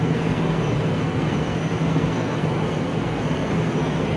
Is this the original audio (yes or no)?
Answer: no